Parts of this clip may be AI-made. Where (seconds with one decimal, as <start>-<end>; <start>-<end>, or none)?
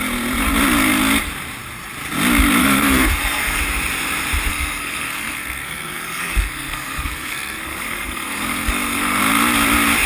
2.6-3.6; 4.5-9.2